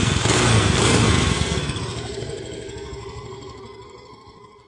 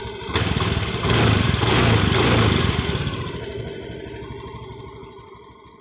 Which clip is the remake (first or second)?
first